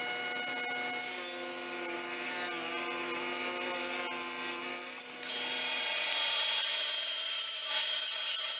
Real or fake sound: real